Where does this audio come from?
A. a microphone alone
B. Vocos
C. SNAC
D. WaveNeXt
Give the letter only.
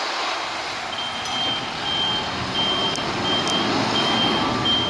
A